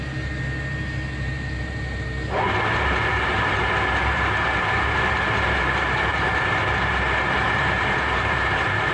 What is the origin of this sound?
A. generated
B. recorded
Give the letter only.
A